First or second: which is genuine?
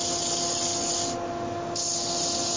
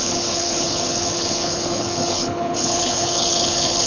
first